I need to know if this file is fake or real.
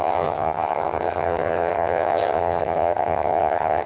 fake